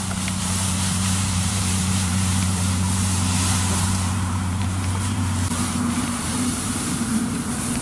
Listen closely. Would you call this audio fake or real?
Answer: fake